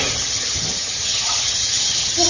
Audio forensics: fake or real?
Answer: fake